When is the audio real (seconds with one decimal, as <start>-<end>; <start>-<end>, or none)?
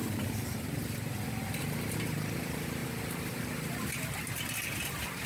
none